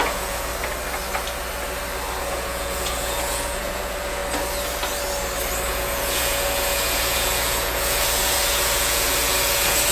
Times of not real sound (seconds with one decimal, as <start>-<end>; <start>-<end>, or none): 0.0-0.5; 2.2-4.2; 5.7-9.9